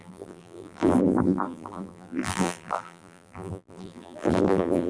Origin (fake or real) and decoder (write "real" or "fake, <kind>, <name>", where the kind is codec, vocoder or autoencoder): fake, vocoder, BigVGAN v2